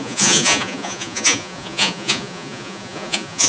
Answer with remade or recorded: remade